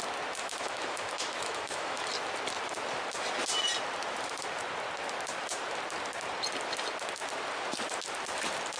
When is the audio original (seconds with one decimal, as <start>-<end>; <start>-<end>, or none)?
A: 0.0-0.4; 2.0-8.8